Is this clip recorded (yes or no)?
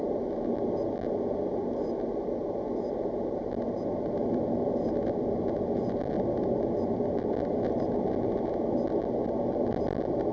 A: yes